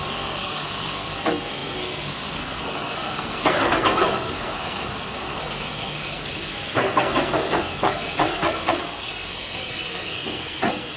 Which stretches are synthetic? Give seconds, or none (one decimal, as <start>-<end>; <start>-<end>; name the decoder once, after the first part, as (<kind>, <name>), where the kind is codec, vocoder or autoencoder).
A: 0.0-11.0 (codec, SNAC)